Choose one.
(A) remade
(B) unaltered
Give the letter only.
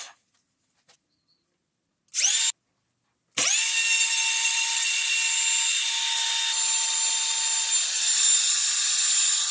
B